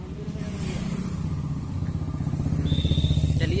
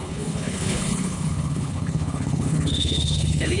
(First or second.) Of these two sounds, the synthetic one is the second